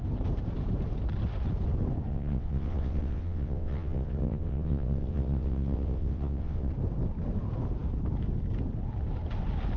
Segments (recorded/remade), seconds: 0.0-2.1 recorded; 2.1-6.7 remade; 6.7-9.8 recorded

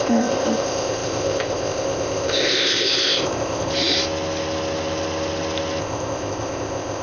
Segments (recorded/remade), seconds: 0.0-3.7 remade; 3.7-5.8 recorded; 5.8-7.0 remade

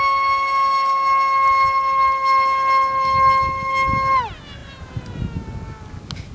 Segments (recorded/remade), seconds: 0.0-4.6 recorded; 4.6-5.2 remade; 5.2-6.3 recorded

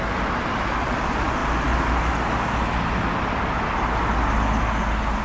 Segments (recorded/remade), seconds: 0.0-5.2 recorded

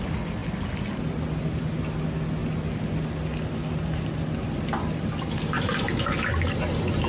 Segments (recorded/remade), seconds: 0.0-7.1 recorded

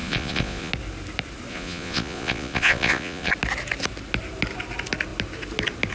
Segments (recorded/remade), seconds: 0.0-0.7 remade; 0.7-1.5 recorded; 1.5-3.3 remade; 3.3-5.9 recorded

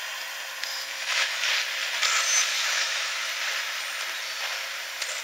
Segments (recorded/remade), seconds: 0.0-0.7 recorded; 0.7-1.4 remade; 1.4-2.5 recorded; 2.5-3.3 remade; 3.3-5.2 recorded